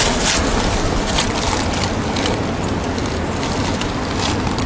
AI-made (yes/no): no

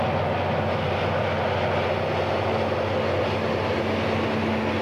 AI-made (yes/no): no